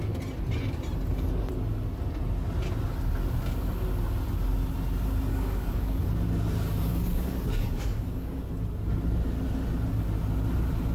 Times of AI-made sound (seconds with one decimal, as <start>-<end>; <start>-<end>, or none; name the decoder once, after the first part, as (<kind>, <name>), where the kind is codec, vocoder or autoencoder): 5.3-6.0 (codec, DAC); 6.9-8.4